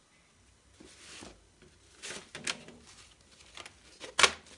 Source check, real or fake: real